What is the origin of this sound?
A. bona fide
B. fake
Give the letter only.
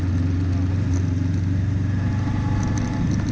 A